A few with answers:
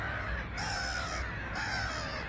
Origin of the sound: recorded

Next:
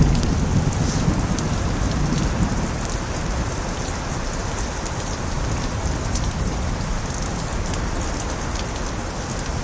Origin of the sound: recorded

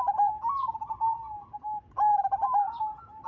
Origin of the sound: recorded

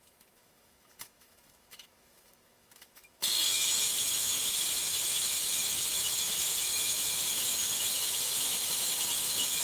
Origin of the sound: remade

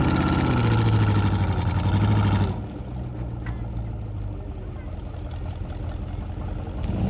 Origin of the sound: recorded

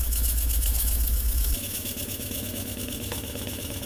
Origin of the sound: remade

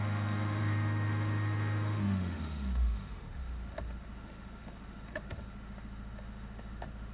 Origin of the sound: remade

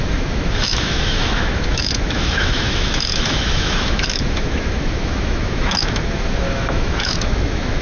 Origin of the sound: remade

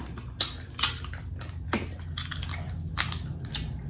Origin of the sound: recorded